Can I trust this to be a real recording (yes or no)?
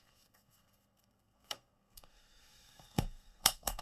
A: no